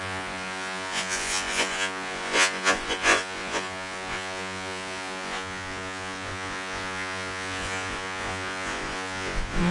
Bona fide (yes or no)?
no